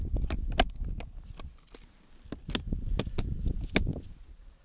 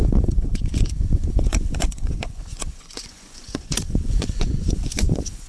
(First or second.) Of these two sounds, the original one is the first